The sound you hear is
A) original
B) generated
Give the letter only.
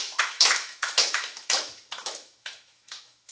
B